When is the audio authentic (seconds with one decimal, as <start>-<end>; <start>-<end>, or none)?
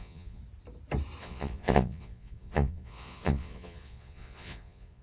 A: 0.4-1.2